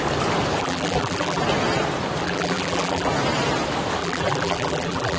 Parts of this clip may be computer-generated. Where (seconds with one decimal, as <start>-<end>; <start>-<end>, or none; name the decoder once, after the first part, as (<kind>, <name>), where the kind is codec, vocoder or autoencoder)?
0.6-1.4 (vocoder, BigVGAN v2); 2.2-3.1; 4.0-5.2